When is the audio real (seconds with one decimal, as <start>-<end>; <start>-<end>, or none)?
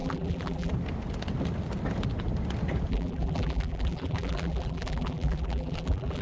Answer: 0.7-2.9